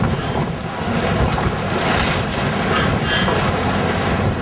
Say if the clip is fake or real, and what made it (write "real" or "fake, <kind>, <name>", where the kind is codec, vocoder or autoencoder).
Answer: real